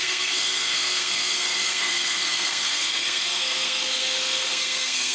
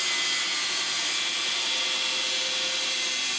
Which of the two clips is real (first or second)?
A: second